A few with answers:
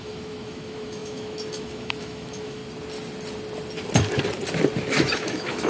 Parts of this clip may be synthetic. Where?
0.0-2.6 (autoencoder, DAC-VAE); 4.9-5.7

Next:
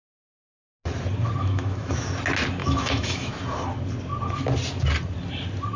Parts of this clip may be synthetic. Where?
1.4-2.1 (autoencoder, DAC-VAE); 2.6-3.3

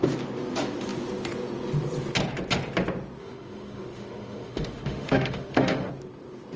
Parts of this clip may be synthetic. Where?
3.2-5.9 (autoencoder, DAC-VAE)

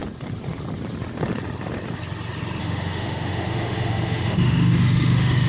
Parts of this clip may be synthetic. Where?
2.6-5.5 (autoencoder, DAC-VAE)

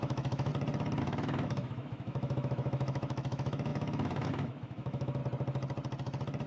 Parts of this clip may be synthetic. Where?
0.0-0.5 (autoencoder, DAC-VAE); 1.0-5.2